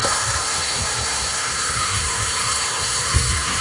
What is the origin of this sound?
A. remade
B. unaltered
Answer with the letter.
A